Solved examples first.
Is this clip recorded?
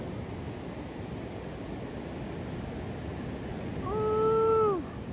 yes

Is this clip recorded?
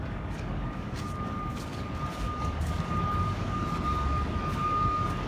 no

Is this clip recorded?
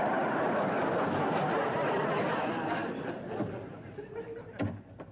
yes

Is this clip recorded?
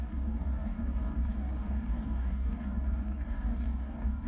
no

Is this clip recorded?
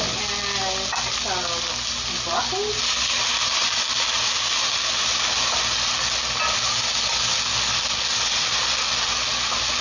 yes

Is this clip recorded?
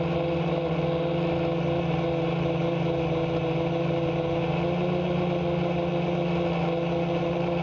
yes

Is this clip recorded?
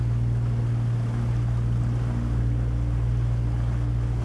yes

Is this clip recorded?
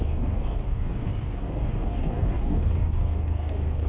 no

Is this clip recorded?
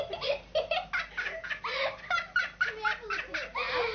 yes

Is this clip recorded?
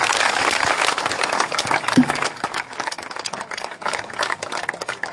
no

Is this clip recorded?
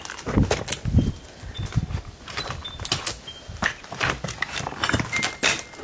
yes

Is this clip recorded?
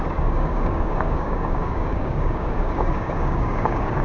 no